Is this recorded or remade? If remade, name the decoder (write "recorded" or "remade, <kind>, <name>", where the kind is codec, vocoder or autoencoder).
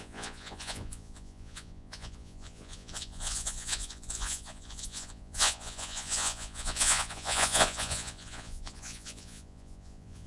remade, vocoder, Vocos